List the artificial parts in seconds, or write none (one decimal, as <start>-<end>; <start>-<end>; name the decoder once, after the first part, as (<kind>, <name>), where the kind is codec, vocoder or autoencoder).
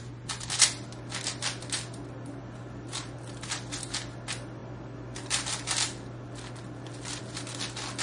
2.4-3.9 (vocoder, BigVGAN v2); 4.6-7.2